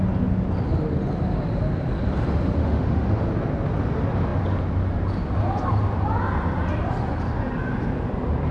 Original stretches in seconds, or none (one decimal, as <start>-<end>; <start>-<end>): 0.0-2.6; 3.2-8.5